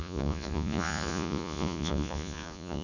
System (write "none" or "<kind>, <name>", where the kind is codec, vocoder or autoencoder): vocoder, Vocos